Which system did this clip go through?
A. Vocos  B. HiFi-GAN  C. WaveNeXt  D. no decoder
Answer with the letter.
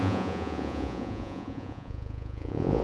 A